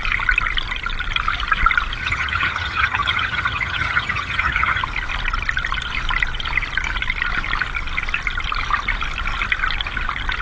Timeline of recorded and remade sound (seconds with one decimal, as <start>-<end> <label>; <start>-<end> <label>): 0.0-2.0 recorded; 2.0-4.8 remade; 4.8-10.4 recorded